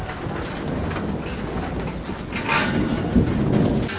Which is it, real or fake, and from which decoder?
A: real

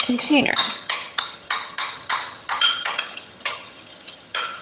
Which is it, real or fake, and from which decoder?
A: fake, vocoder, HiFi-GAN